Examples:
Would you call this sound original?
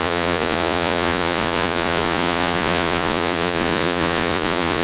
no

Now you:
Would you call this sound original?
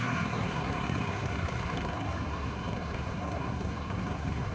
no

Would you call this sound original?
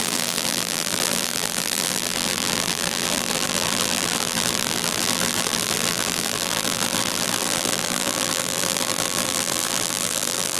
no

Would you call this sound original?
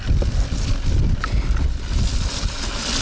yes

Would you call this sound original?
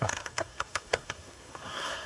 no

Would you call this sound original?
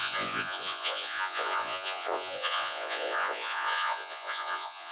no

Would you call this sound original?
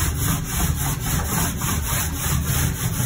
yes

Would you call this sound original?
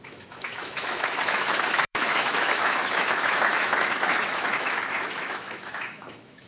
no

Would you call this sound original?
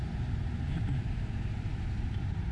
yes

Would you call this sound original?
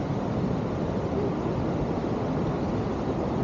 yes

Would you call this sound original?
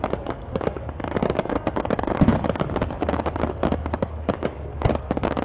no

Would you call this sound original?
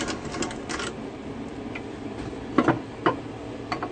yes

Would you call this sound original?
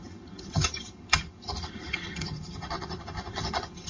no